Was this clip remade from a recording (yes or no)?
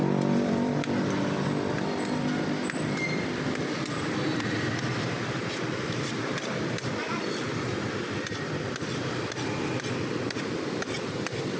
yes